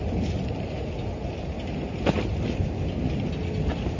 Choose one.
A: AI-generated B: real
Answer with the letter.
B